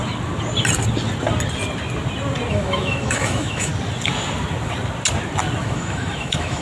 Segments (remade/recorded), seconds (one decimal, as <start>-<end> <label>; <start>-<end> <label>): 0.0-2.5 recorded; 2.5-3.7 remade; 3.7-5.6 recorded; 5.6-6.6 remade